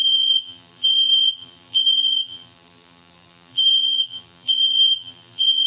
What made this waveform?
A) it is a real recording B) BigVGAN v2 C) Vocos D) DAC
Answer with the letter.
B